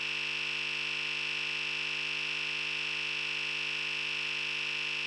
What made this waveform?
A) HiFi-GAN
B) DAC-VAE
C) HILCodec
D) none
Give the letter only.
D